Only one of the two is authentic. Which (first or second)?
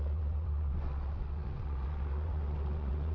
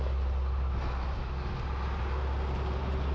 second